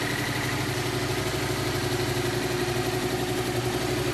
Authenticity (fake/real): real